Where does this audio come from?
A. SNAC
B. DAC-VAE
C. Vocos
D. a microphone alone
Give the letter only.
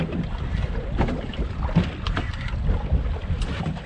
D